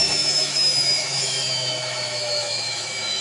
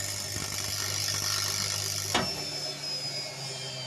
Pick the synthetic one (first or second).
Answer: first